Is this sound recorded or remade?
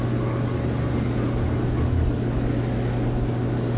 recorded